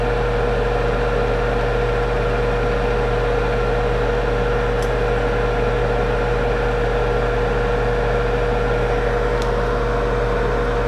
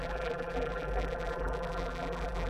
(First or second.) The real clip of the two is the first